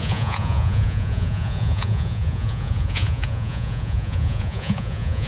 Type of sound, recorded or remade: remade